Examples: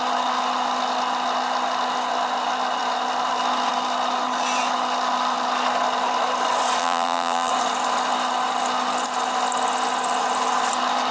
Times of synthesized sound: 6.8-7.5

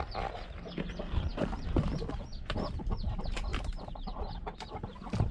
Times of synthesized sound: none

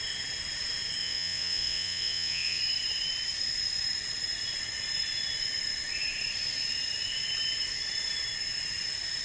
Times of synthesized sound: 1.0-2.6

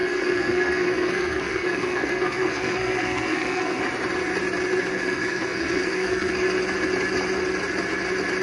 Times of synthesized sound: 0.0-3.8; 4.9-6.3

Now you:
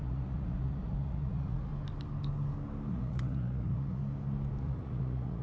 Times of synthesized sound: 0.0-1.7; 2.9-4.0; 4.6-5.4

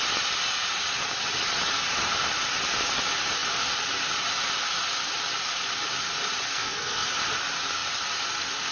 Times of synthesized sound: 6.5-7.1

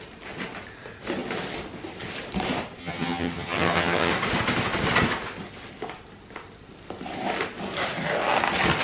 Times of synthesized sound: 2.8-4.1